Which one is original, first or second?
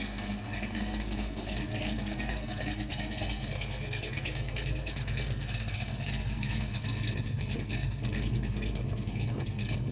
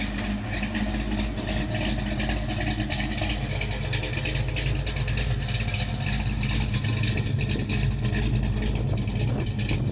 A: second